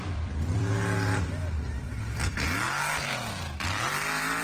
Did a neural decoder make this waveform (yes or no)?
yes